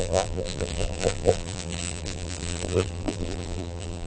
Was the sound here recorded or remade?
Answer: remade